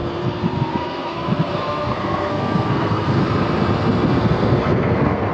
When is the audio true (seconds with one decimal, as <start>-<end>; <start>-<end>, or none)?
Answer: 3.2-4.2